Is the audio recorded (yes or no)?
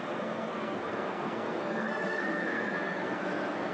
no